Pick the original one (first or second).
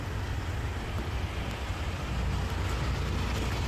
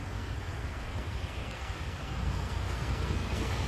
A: first